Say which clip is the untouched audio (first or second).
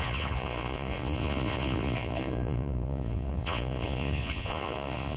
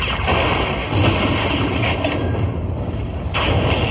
second